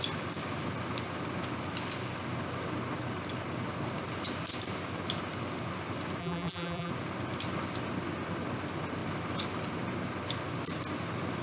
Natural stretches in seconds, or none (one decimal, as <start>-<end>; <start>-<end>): 0.0-6.2; 6.9-11.4

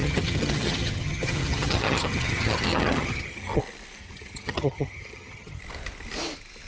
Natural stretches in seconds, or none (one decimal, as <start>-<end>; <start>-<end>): 3.6-4.0; 5.6-6.7

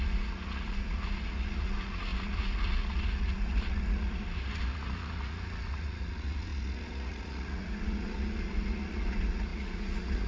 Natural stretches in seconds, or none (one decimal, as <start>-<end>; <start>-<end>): none

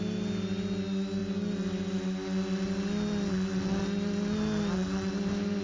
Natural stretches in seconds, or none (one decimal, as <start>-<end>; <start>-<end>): 0.0-5.6

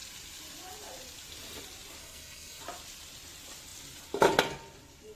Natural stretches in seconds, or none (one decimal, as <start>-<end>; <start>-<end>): 0.0-2.0; 2.6-5.1

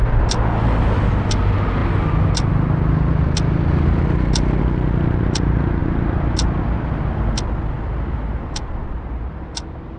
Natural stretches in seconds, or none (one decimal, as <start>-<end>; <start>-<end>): 0.0-10.0

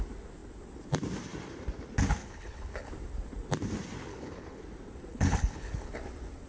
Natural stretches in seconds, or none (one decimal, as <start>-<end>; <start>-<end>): 0.0-2.2; 2.9-4.1; 4.6-5.1; 6.0-6.5